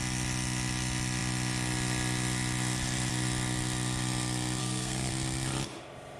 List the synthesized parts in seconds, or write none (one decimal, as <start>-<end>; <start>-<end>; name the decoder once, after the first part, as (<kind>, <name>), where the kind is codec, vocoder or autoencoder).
4.6-5.1 (codec, SNAC)